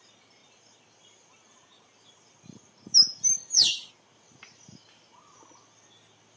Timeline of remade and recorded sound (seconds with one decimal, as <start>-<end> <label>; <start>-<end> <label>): 0.0-6.4 recorded

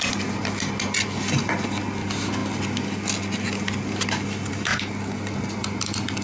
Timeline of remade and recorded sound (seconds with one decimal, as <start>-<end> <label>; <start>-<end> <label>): 0.0-6.2 recorded

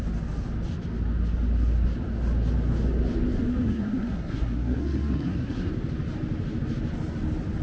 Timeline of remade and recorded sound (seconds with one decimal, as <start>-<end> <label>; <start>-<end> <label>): 0.0-3.5 recorded; 3.5-5.7 remade; 5.7-7.6 recorded

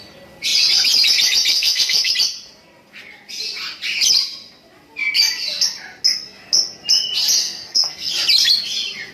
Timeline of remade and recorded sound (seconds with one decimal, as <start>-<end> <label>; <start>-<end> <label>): 0.0-1.5 recorded; 1.5-2.1 remade; 2.1-7.4 recorded; 7.4-8.1 remade; 8.1-9.1 recorded

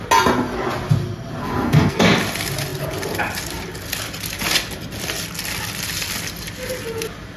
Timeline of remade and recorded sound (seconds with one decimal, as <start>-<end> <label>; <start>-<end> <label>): 0.0-1.4 recorded; 1.4-2.0 remade; 2.0-7.4 recorded

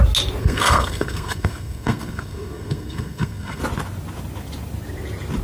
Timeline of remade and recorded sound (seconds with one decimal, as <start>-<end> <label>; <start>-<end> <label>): 0.0-0.4 recorded; 0.4-3.6 remade; 3.6-5.4 recorded

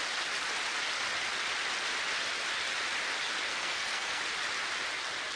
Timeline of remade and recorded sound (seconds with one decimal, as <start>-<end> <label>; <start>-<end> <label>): 0.0-3.5 recorded; 3.5-4.2 remade; 4.2-5.4 recorded